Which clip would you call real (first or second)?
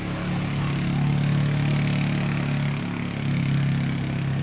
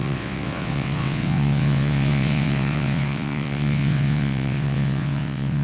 first